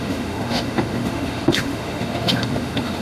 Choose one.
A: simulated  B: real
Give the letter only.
A